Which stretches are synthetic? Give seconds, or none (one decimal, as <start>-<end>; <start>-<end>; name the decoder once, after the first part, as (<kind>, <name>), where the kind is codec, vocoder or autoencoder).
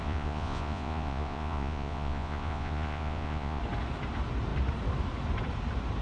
0.0-3.6 (vocoder, Vocos)